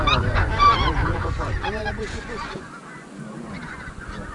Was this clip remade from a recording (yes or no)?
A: yes